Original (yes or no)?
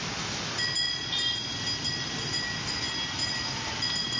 yes